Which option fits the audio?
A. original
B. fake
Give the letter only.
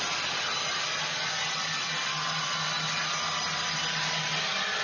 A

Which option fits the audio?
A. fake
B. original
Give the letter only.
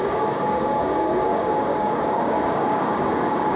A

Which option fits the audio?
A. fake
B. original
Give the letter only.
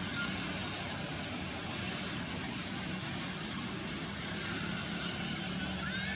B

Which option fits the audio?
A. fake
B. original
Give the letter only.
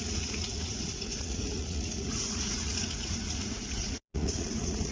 A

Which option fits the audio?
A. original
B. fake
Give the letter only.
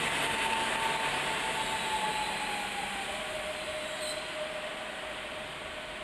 A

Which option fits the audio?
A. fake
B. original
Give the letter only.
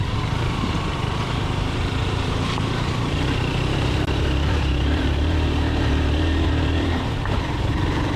A